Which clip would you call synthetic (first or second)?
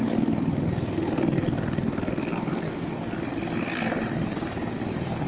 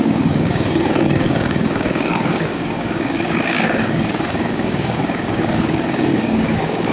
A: second